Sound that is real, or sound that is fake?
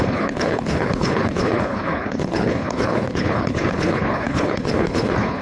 fake